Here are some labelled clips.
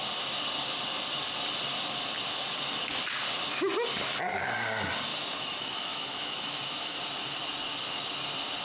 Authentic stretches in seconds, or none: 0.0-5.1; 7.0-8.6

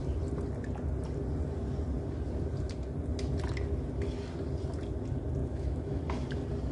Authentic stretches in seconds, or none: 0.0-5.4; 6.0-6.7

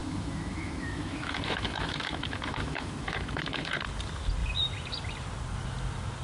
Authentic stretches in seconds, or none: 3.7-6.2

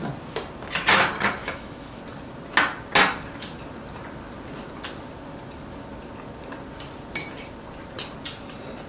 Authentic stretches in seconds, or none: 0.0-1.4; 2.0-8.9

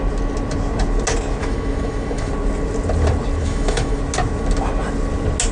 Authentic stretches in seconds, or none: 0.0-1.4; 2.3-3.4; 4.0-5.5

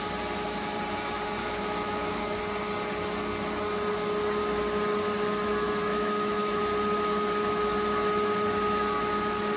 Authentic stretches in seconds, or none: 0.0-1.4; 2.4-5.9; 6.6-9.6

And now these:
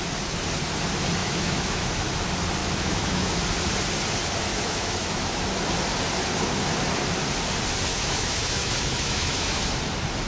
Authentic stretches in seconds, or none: 0.0-1.2; 1.9-2.6; 3.4-4.5; 5.4-7.9; 9.7-10.3